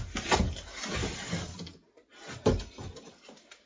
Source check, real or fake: real